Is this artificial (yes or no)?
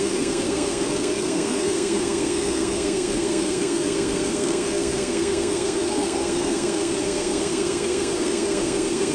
yes